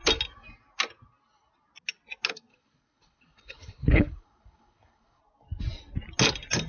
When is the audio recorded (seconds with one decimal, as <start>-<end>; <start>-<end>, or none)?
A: 0.0-2.5; 5.2-6.7